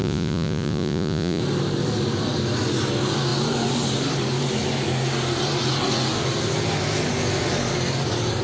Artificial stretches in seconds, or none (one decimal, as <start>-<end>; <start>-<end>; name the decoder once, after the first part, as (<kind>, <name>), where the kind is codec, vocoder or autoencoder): 0.0-1.4 (vocoder, Vocos)